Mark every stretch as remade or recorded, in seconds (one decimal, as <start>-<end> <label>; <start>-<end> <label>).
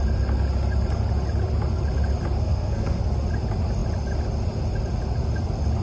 0.0-2.4 recorded; 2.4-3.0 remade; 3.0-5.8 recorded